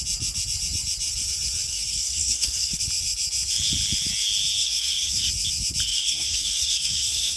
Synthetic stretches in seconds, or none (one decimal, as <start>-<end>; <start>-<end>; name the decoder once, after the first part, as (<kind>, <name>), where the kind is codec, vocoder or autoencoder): 1.7-2.8 (codec, SNAC); 4.6-5.3; 5.9-7.4